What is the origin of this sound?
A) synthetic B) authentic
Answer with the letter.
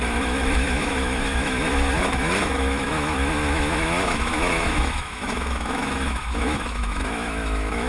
A